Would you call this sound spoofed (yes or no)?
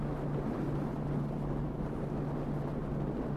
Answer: no